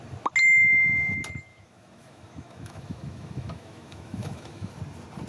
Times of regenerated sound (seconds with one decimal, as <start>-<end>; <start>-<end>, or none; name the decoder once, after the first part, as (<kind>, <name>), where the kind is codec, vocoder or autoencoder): 1.5-4.7 (autoencoder, DAC-VAE)